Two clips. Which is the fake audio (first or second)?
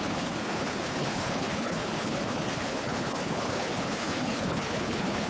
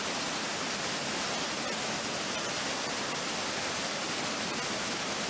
first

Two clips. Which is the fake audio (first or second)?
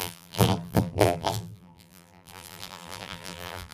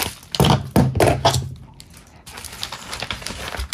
first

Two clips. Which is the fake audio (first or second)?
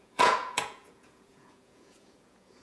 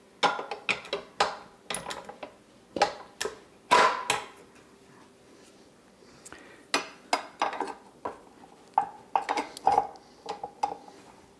first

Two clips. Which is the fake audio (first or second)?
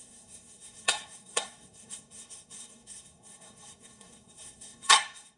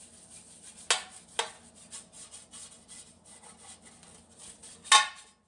first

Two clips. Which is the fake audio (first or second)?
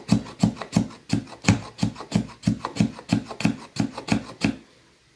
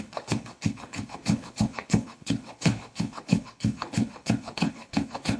second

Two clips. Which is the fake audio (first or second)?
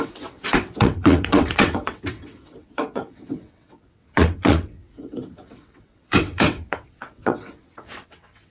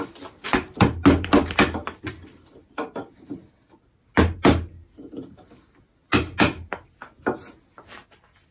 first